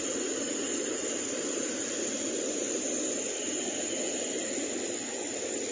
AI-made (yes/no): no